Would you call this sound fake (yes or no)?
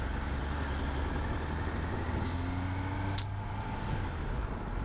no